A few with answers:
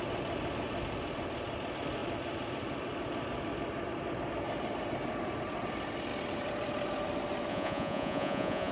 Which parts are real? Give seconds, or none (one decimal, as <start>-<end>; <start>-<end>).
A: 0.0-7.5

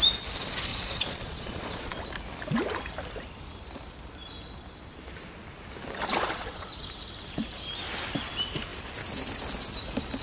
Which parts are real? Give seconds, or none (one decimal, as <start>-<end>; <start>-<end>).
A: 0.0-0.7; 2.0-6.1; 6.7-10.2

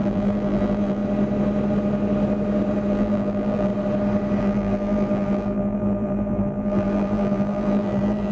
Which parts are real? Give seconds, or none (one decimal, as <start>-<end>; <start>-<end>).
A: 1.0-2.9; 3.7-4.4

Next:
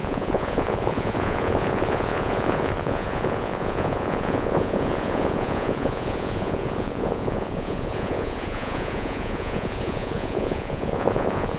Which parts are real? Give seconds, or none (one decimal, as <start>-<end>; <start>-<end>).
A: none

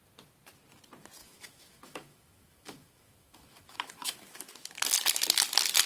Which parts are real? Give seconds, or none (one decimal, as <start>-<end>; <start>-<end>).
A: 0.0-1.2; 4.7-5.9